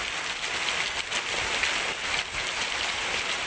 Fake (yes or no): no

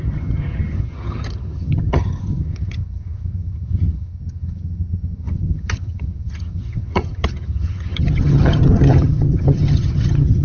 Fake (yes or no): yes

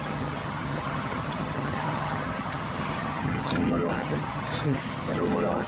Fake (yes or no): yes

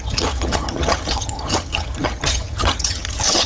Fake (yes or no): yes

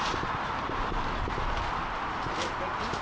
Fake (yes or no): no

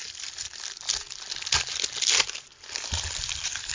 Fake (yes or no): no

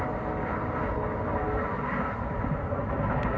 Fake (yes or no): no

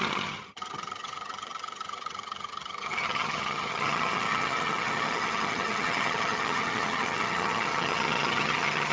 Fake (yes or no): yes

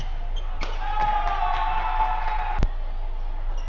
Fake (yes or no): no